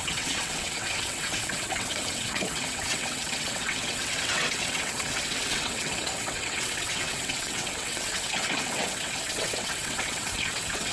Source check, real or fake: fake